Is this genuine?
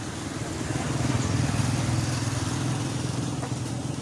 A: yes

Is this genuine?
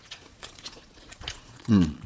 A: no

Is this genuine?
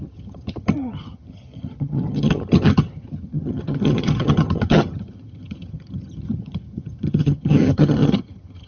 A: no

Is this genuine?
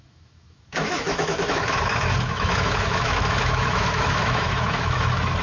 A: no